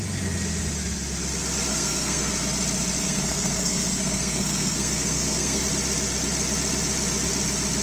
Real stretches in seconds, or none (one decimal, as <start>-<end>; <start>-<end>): 0.0-1.7; 2.3-3.0; 5.6-7.8